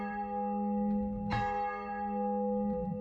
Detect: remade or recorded recorded